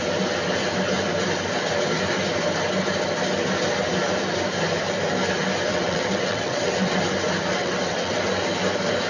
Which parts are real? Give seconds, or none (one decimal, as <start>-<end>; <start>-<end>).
0.0-5.7; 7.0-7.6; 8.2-9.1